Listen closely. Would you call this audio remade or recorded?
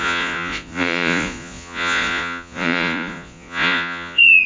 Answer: remade